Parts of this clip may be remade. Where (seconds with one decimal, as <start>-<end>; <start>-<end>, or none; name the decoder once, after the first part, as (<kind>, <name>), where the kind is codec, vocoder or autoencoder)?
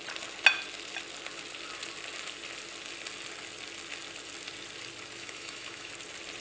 5.2-5.9 (autoencoder, DAC-VAE)